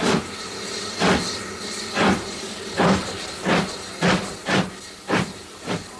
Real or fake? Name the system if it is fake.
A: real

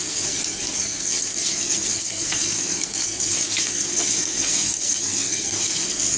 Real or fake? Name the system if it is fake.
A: fake, codec, SNAC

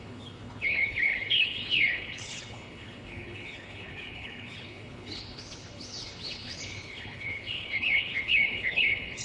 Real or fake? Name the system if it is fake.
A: fake, codec, HILCodec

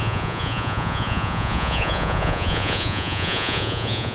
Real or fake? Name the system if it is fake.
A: fake, vocoder, Vocos